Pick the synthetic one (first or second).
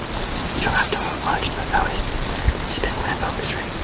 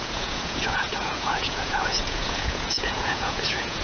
second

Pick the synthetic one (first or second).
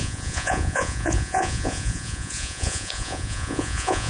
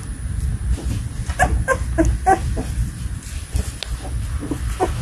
first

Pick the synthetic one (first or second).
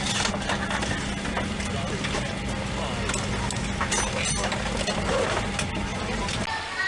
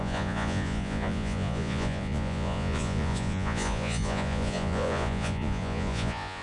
second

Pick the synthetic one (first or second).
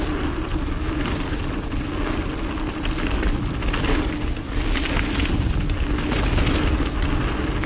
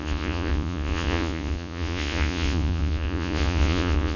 second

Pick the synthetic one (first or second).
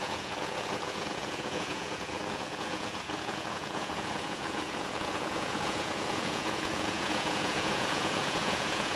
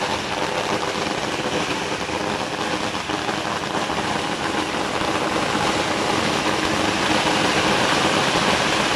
first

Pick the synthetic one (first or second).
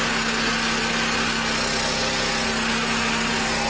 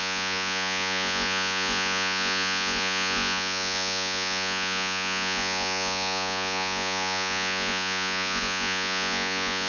second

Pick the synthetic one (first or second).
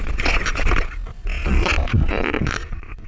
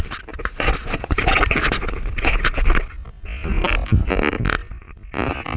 first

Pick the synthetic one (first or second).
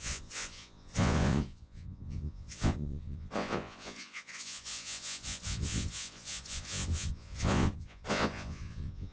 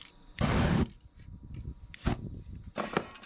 first